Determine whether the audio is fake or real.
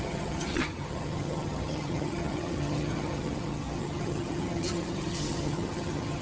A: fake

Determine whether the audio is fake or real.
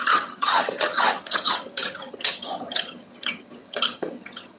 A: fake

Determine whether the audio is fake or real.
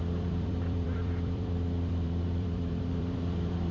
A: fake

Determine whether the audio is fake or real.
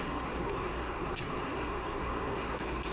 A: fake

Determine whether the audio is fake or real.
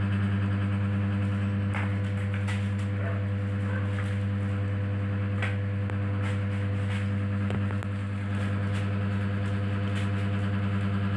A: real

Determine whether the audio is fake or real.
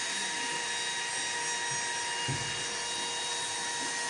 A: real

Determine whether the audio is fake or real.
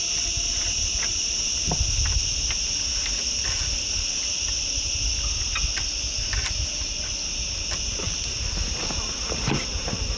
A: real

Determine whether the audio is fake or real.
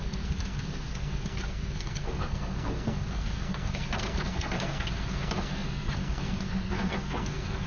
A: fake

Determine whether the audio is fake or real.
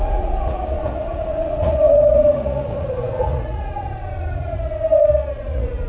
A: fake